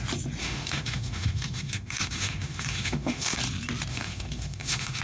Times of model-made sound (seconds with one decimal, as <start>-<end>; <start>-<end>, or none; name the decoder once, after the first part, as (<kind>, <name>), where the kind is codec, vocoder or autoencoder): 0.4-3.4 (autoencoder, DAC-VAE); 3.9-5.0

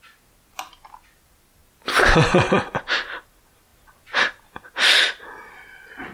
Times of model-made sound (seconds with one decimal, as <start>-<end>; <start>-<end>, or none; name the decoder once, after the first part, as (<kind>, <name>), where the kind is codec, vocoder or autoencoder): none

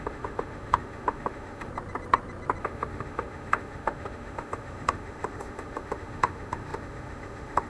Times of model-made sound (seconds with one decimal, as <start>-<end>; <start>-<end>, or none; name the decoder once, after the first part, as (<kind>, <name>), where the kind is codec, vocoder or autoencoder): 0.0-1.7 (autoencoder, DAC-VAE); 2.6-7.7